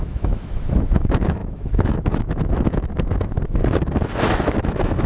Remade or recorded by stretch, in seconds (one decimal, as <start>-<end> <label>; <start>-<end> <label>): 0.0-3.6 remade; 3.6-4.6 recorded; 4.6-5.1 remade